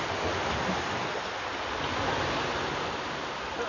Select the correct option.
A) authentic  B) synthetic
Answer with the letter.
A